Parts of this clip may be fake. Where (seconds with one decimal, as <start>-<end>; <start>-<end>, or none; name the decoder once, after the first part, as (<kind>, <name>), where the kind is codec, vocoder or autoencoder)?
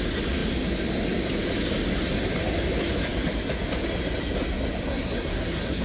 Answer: 4.9-5.8 (codec, SNAC)